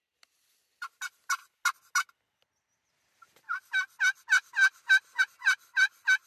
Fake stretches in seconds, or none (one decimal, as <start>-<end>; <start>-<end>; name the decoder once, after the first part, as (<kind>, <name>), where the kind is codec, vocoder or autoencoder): none